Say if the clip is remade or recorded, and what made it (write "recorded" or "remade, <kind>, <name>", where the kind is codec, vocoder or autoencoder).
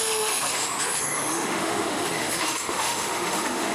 remade, autoencoder, DAC-VAE